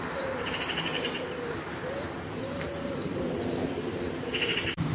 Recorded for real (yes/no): no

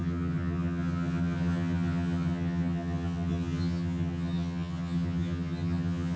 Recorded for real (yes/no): no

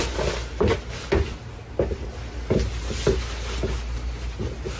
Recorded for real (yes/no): yes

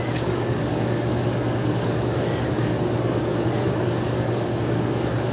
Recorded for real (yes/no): no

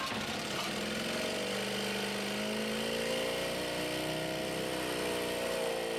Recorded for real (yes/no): yes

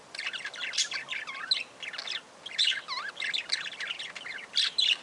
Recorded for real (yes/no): yes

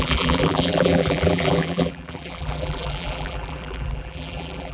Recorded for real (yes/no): no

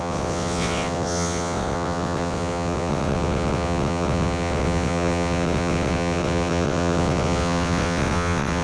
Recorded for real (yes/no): no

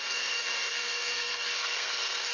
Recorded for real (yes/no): no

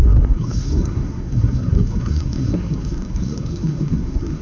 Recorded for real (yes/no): no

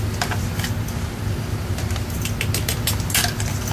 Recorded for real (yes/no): yes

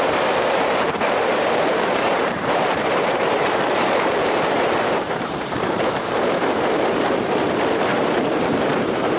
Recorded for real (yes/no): no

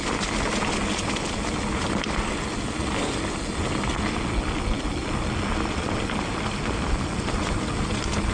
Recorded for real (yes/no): yes